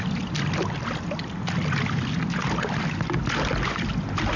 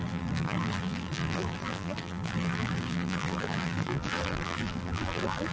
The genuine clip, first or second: first